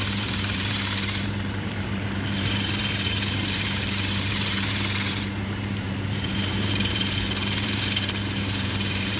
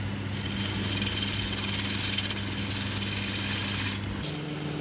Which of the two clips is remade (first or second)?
first